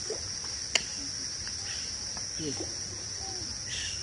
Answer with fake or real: real